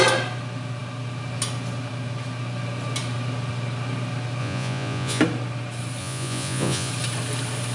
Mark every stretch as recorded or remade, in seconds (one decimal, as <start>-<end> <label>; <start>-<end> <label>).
0.0-4.4 recorded; 4.4-5.2 remade; 5.2-6.0 recorded; 6.0-6.9 remade; 6.9-7.7 recorded